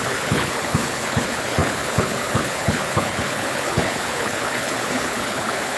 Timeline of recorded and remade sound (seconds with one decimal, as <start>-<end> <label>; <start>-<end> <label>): 0.0-5.8 remade